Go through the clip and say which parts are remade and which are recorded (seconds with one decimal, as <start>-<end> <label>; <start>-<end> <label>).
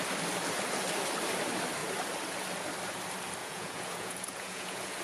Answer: 0.0-3.4 recorded; 3.4-5.0 remade